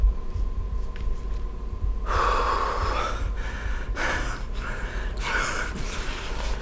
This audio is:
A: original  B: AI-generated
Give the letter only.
A